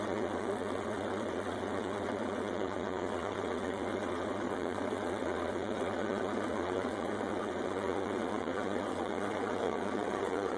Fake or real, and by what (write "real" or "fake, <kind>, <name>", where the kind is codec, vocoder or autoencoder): fake, vocoder, WaveNeXt